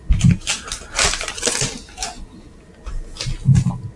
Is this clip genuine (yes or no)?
yes